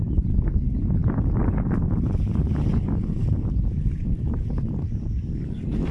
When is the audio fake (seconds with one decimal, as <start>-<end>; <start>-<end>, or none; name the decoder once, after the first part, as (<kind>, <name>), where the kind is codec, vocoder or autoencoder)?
none